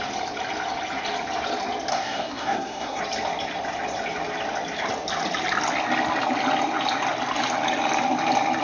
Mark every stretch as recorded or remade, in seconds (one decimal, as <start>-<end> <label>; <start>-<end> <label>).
0.0-1.9 recorded; 1.9-3.0 remade; 3.0-8.6 recorded